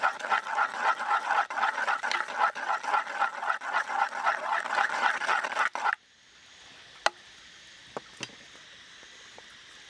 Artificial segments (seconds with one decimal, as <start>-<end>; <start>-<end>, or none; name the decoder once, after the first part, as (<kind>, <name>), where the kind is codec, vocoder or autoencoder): none